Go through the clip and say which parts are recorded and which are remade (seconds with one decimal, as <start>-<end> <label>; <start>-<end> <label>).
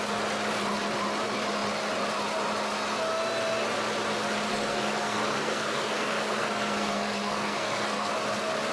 0.0-4.5 recorded; 4.5-8.1 remade; 8.1-8.7 recorded